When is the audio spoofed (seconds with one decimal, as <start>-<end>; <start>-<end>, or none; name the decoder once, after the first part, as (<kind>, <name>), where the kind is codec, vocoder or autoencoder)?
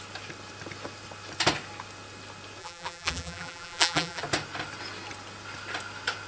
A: 2.6-4.2 (vocoder, BigVGAN v2)